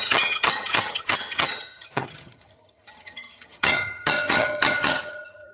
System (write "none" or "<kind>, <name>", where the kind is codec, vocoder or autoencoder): vocoder, HiFi-GAN